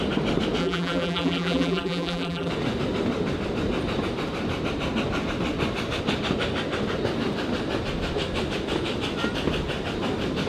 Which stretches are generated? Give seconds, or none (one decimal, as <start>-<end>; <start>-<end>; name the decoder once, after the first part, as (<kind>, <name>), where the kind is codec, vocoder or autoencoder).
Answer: 0.6-2.5 (vocoder, BigVGAN v2)